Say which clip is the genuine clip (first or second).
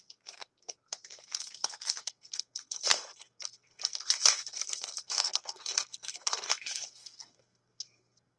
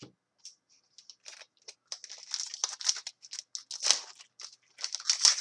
second